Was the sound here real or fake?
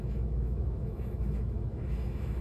fake